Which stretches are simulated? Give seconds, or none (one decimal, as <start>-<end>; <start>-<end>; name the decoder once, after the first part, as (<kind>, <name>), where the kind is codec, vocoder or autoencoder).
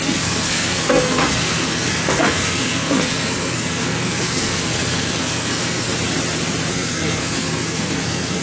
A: 0.0-5.9 (codec, SNAC); 6.7-8.4